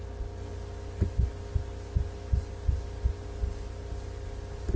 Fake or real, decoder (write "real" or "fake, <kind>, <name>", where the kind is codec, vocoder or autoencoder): real